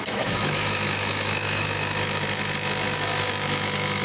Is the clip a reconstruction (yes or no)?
yes